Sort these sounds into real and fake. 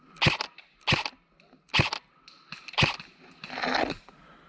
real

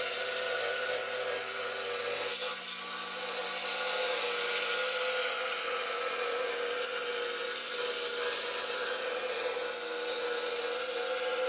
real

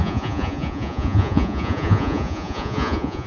fake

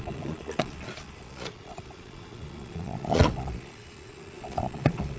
fake